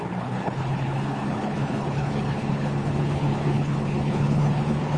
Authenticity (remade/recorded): remade